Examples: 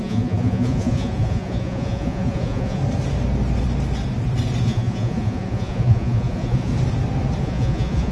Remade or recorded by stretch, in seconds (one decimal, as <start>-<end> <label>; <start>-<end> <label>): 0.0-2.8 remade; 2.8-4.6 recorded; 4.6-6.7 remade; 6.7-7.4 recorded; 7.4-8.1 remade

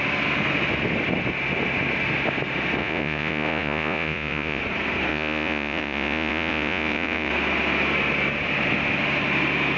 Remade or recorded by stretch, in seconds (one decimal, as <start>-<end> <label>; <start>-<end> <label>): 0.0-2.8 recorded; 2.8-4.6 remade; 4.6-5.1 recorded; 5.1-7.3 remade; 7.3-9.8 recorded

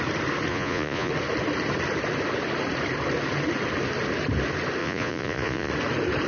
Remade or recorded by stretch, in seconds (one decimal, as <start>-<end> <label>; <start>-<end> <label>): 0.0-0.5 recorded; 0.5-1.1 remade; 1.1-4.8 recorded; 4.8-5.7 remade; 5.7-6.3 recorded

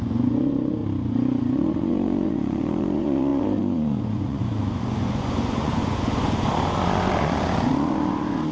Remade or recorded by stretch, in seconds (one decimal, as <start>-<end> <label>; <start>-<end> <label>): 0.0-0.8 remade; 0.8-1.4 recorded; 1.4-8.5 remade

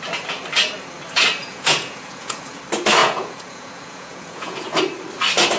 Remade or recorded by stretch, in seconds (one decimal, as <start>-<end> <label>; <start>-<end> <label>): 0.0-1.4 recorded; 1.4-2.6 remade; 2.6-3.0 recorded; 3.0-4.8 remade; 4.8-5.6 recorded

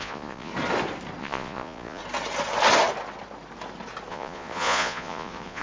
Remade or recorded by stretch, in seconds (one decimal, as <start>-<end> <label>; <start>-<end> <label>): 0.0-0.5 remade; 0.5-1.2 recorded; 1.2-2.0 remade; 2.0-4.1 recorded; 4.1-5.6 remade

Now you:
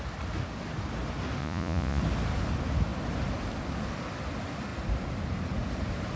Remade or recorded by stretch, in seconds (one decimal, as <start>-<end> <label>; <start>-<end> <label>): 0.0-1.4 recorded; 1.4-2.0 remade; 2.0-6.2 recorded